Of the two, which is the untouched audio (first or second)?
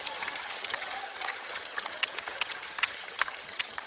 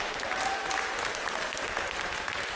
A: second